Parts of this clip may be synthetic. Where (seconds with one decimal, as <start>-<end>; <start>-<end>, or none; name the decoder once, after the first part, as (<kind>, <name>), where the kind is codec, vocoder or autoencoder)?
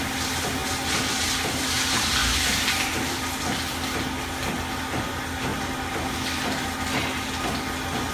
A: none